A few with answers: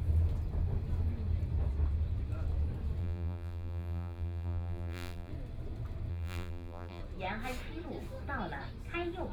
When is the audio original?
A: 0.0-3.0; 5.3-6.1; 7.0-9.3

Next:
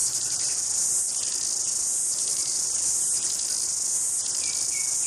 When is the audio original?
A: 1.0-2.2; 3.3-5.1